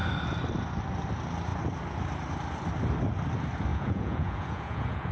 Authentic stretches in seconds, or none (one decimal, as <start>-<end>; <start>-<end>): 0.0-3.7